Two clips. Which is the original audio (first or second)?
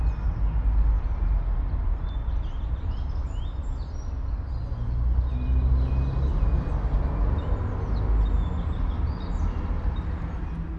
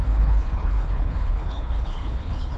first